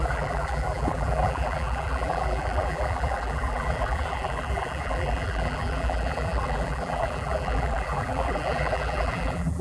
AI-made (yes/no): yes